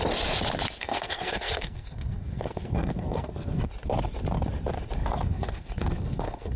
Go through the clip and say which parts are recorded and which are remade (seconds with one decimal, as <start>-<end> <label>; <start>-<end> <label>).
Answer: 0.0-0.8 recorded; 0.8-3.7 remade; 3.7-5.0 recorded; 5.0-6.6 remade